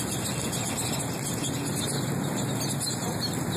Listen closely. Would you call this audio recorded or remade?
recorded